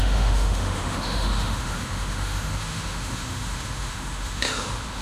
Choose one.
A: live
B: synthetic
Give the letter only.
B